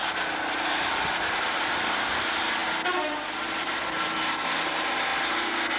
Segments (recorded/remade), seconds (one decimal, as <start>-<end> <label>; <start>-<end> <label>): 0.0-5.8 recorded